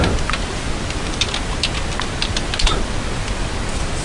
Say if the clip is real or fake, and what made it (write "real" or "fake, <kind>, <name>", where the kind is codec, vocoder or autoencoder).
real